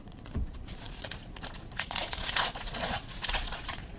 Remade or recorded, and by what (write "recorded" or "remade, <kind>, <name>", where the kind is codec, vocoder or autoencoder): remade, vocoder, Vocos